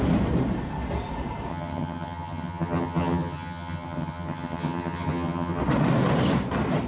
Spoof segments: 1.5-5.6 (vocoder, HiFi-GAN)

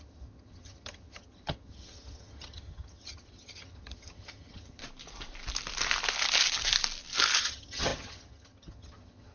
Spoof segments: 0.0-4.8 (vocoder, HiFi-GAN); 7.4-9.3

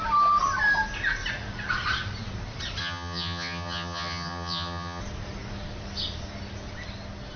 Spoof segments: 2.8-5.0 (vocoder, HiFi-GAN)

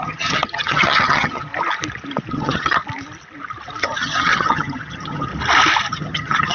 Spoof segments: 0.0-1.5 (vocoder, HiFi-GAN); 2.3-2.8; 3.8-5.3; 5.9-6.5